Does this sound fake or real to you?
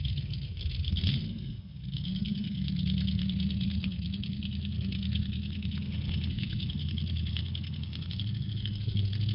fake